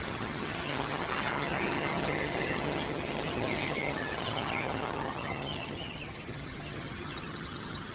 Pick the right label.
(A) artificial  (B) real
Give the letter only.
A